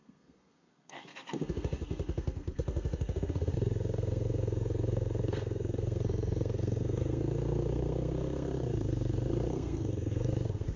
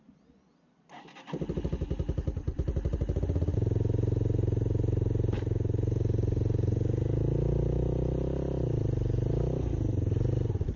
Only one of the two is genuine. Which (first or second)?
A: second